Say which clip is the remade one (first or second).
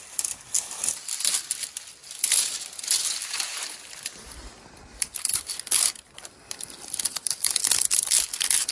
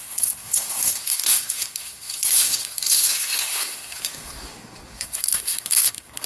second